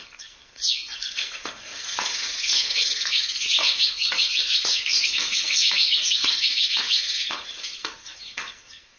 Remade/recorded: remade